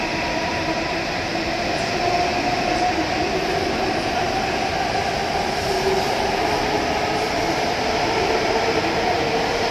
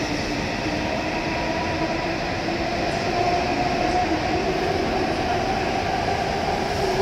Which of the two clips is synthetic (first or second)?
first